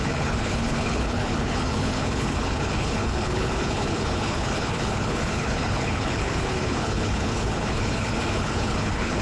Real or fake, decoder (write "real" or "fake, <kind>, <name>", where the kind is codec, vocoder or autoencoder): fake, codec, HILCodec